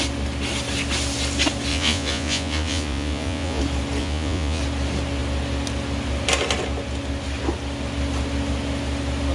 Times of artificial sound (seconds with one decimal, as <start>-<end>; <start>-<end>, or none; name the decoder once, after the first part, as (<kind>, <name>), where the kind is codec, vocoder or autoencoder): 1.7-3.6 (vocoder, Vocos); 4.0-4.6